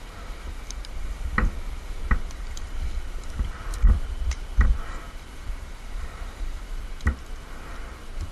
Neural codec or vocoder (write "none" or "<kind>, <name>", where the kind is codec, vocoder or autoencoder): vocoder, BigVGAN v2